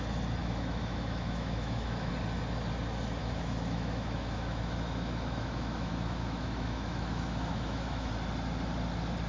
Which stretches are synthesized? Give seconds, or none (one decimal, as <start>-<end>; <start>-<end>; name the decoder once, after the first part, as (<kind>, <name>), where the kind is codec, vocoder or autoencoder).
0.4-2.1 (autoencoder, DAC-VAE); 3.2-8.1